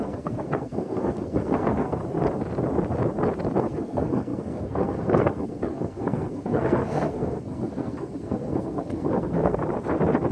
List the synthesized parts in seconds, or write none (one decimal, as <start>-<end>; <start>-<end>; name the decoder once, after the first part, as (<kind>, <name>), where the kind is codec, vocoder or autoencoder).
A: 0.0-2.0 (codec, SNAC); 3.6-9.6